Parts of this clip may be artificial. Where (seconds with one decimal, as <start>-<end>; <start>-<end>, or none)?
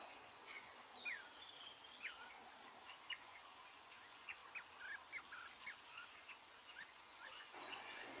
0.0-0.7; 3.1-4.4; 5.9-8.2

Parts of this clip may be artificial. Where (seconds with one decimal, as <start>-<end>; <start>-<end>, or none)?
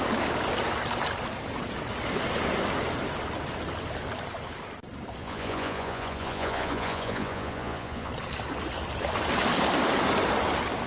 5.2-8.1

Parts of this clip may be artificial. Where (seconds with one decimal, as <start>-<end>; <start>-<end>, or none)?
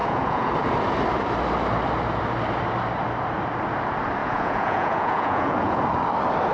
0.0-0.5; 4.2-5.8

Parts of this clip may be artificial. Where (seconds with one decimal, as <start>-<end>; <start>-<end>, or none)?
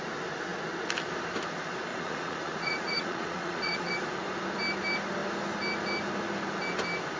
1.9-3.9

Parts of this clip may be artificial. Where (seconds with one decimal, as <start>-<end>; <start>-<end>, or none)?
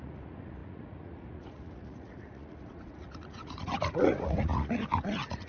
0.0-5.5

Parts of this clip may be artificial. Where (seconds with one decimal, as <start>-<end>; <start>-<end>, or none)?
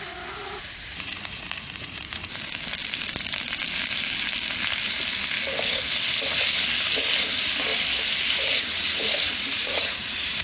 0.0-2.2; 7.2-7.7; 8.5-10.4